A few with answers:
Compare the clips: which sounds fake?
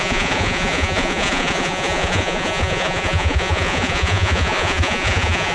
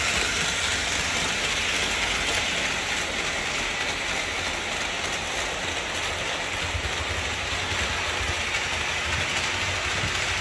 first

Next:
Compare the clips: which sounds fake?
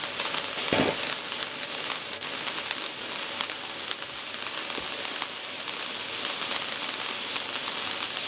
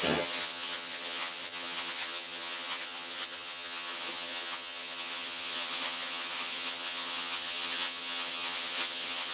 second